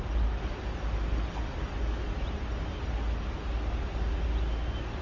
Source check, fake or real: real